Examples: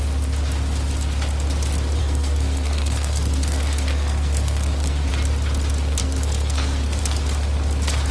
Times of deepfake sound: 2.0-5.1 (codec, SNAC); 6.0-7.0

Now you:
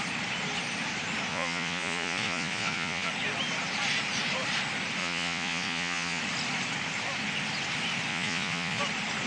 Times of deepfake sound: 1.3-3.1 (vocoder, Vocos); 5.0-6.2; 8.1-8.8

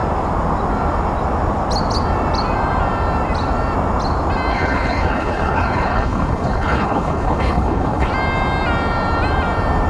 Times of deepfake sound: 4.5-8.1 (codec, HILCodec)